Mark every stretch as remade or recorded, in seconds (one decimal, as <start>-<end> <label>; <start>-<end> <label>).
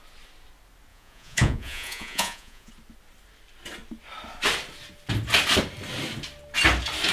0.0-0.9 recorded; 0.9-2.7 remade; 2.7-7.1 recorded